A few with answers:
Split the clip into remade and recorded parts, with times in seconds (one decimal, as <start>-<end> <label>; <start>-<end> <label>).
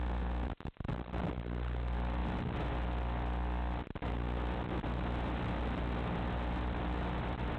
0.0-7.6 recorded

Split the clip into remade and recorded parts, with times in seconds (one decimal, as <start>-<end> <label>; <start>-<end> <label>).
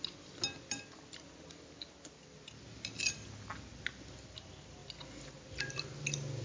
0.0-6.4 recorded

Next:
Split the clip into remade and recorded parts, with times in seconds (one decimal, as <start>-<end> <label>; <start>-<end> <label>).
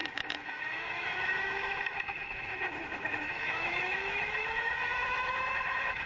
0.0-6.1 remade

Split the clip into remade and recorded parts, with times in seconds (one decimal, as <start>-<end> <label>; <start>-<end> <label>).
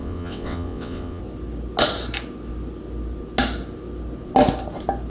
0.0-1.2 remade; 1.2-5.1 recorded